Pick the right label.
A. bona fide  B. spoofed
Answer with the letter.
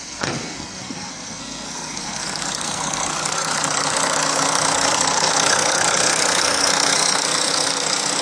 B